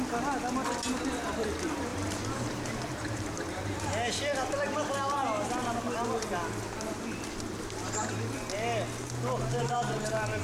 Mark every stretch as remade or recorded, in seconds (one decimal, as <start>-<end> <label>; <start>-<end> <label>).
0.0-1.9 recorded; 1.9-3.9 remade; 3.9-9.5 recorded; 9.5-10.0 remade; 10.0-10.4 recorded